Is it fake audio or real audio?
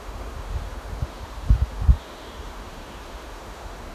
fake